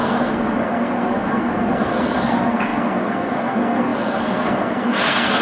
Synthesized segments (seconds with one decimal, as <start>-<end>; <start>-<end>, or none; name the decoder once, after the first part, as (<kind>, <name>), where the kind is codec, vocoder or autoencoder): 0.0-5.4 (codec, SNAC)